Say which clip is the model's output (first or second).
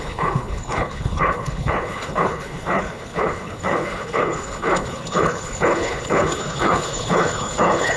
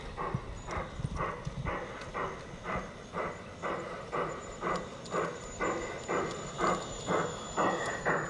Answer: first